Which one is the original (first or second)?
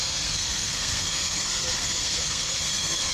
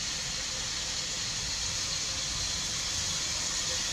second